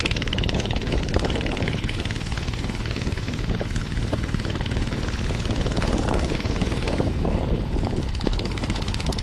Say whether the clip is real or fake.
fake